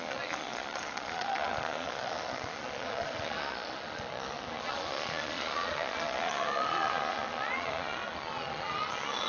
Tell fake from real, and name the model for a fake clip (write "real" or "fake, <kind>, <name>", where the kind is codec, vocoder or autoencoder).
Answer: fake, vocoder, Vocos